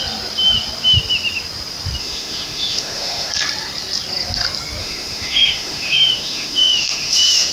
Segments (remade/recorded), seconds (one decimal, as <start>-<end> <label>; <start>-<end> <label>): 0.0-2.0 recorded; 2.0-3.3 remade; 3.3-4.8 recorded; 4.8-7.5 remade